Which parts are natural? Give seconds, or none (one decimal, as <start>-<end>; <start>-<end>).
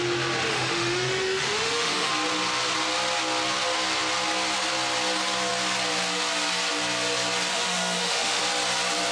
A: 0.0-0.5; 2.1-7.5; 8.4-9.1